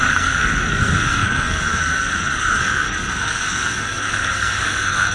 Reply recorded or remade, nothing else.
remade